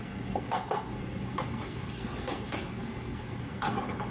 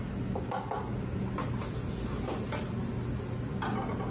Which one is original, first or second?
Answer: second